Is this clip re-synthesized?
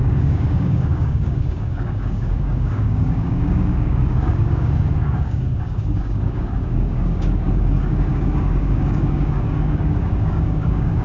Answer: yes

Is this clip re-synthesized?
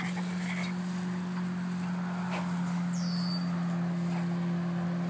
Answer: no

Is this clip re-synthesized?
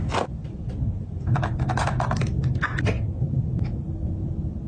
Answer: no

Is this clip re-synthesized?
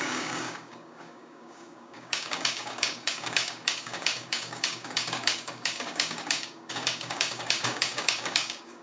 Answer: yes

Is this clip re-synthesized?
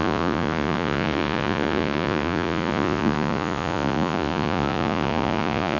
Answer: yes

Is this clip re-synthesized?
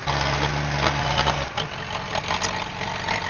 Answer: no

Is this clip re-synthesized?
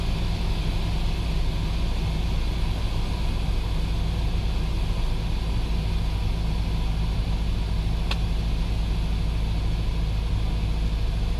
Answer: no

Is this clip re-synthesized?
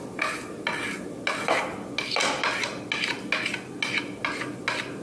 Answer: no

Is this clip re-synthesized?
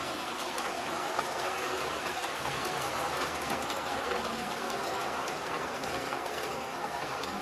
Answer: yes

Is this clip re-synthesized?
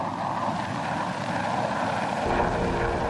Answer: no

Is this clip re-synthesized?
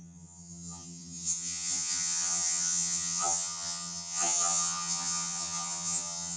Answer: yes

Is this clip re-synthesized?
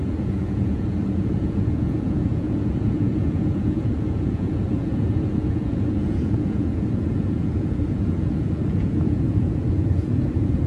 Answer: yes